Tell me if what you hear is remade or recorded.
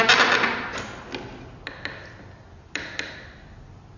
recorded